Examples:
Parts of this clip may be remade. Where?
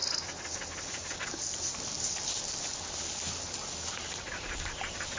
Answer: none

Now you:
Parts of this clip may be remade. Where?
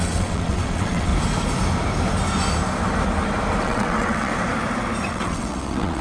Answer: 0.0-1.1 (vocoder, WaveNeXt); 3.6-4.3; 5.1-6.0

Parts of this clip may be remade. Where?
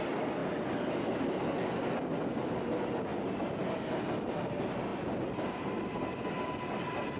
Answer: none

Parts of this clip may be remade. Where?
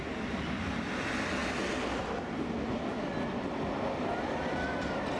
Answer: none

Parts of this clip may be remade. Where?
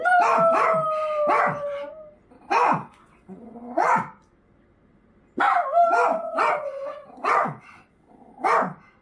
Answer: 2.7-4.0 (vocoder, WaveNeXt); 6.1-8.3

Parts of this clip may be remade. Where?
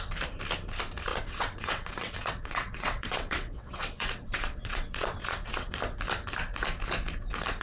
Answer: 1.1-5.7 (vocoder, WaveNeXt)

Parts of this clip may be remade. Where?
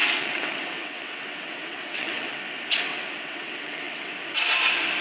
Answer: 0.0-2.4 (vocoder, WaveNeXt); 2.9-4.1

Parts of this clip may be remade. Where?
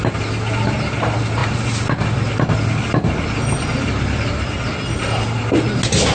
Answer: none